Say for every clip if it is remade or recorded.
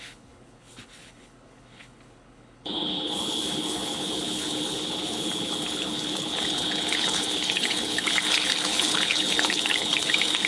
remade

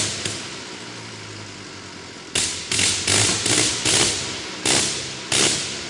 recorded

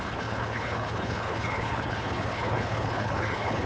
remade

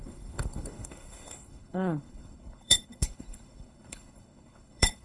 remade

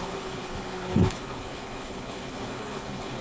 remade